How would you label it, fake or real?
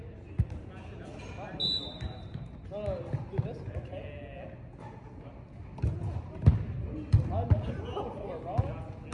real